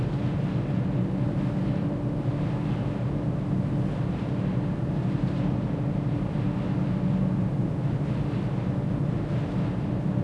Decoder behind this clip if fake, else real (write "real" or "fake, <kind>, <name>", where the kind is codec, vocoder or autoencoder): real